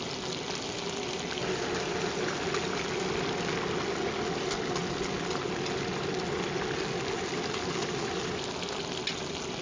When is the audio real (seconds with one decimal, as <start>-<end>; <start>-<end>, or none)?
0.0-9.6